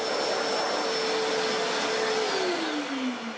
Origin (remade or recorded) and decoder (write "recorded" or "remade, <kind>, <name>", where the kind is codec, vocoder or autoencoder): recorded